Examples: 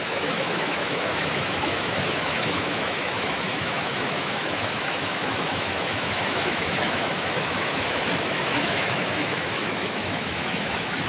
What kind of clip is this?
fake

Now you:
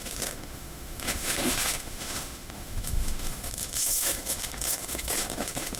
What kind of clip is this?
fake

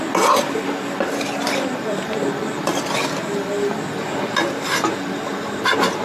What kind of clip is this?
real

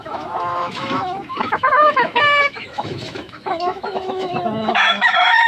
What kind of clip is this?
fake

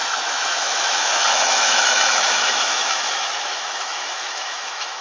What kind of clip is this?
fake